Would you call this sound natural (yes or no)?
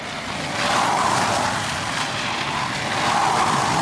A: yes